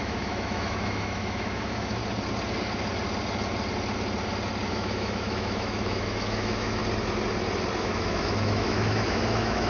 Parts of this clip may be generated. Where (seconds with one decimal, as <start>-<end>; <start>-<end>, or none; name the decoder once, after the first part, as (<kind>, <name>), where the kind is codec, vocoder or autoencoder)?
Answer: 0.0-2.0 (autoencoder, DAC-VAE); 4.7-6.8; 7.8-9.7